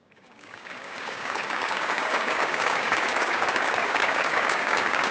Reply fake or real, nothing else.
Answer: fake